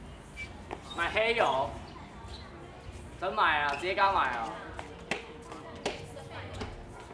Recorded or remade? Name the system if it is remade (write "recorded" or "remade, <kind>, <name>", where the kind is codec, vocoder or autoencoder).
recorded